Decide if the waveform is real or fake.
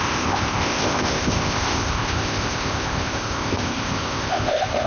fake